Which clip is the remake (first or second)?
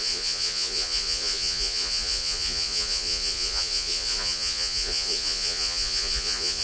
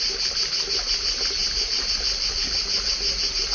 first